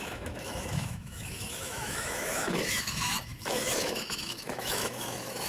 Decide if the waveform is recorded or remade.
remade